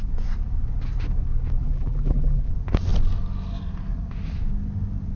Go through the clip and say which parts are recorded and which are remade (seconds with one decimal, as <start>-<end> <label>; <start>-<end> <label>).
0.0-1.6 recorded; 1.6-2.5 remade; 2.5-5.2 recorded